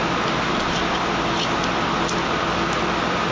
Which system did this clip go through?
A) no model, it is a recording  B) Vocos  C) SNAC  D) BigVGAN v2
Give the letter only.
A